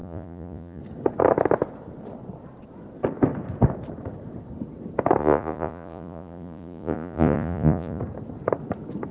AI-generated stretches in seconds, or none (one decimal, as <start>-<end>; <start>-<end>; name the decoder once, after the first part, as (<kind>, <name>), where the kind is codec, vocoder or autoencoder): 0.0-0.8 (vocoder, Vocos); 5.2-8.0